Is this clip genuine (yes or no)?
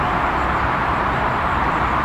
no